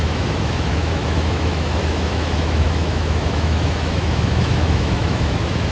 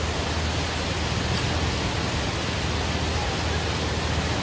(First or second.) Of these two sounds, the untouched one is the second